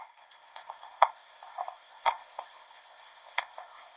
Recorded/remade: remade